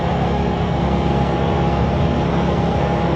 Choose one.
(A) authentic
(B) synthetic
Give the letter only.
B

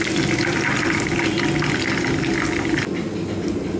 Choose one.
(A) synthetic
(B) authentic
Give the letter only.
B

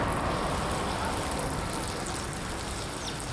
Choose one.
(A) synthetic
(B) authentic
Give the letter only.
B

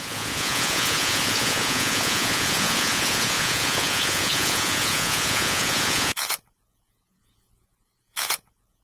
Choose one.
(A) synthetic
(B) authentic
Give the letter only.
A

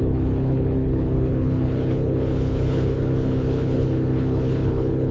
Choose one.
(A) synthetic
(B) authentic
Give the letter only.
A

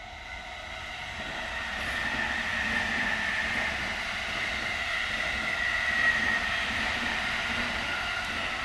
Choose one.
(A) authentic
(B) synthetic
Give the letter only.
A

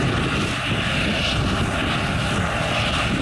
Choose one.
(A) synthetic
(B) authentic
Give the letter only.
B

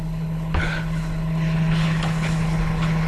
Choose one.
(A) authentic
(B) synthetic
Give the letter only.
B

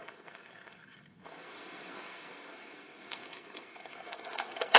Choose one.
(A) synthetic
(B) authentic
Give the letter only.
A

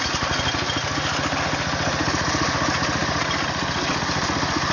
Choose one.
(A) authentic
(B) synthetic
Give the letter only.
A